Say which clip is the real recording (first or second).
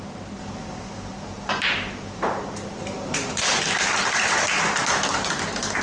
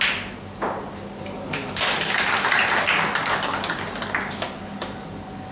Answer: second